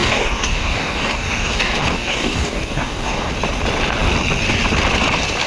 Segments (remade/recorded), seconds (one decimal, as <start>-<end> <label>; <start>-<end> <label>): 0.0-3.3 remade; 3.3-5.5 recorded